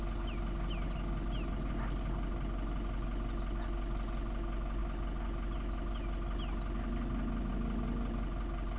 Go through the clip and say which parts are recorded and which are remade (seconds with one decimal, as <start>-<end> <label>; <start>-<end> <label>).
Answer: 0.0-8.8 recorded